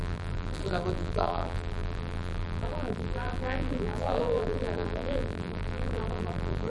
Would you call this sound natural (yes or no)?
no